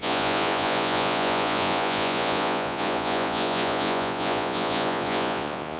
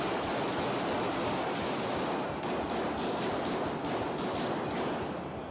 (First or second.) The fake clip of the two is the first